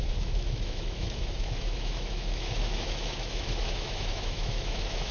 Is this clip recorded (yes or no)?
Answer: no